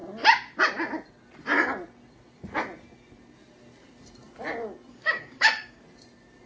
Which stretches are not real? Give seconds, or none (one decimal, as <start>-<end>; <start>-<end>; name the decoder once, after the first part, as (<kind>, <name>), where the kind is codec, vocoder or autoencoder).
4.9-5.8 (codec, DAC)